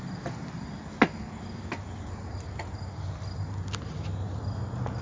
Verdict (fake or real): real